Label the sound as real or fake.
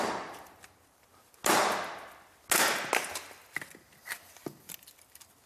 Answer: real